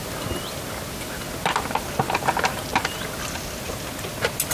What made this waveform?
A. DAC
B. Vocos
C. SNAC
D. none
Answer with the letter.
D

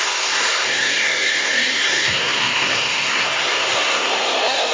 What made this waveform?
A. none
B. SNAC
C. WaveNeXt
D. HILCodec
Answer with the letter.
B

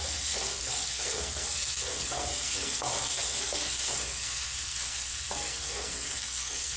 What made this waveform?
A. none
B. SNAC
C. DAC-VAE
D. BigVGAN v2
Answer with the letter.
B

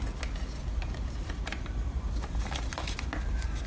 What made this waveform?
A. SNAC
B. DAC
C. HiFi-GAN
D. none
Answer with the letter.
D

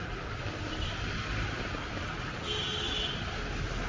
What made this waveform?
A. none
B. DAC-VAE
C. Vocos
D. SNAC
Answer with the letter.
A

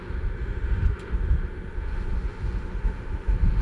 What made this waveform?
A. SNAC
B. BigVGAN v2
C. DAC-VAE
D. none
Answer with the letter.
C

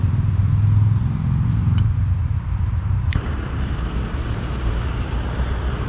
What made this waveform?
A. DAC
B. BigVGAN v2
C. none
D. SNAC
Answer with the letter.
B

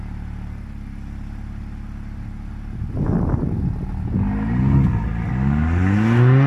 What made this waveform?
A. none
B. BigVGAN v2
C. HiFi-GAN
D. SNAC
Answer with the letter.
A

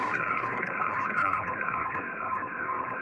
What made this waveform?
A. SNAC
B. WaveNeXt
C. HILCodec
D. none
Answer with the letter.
A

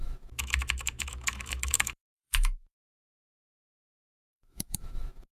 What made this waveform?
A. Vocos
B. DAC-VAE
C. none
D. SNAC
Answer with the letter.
B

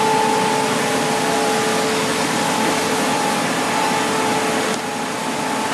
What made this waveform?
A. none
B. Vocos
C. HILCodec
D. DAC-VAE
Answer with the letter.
A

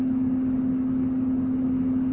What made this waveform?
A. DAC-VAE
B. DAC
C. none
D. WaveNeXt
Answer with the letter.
C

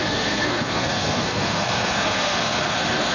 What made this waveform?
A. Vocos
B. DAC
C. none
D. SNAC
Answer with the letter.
D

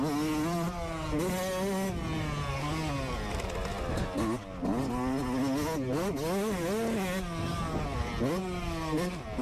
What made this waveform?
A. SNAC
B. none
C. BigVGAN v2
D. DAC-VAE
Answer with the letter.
B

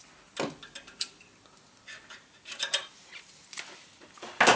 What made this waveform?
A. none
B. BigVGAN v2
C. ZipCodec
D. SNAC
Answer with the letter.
A